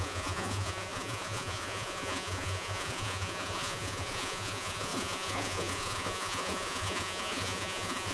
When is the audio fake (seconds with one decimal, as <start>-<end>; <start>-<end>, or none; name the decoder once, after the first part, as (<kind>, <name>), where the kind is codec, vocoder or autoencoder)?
0.0-8.1 (vocoder, Vocos)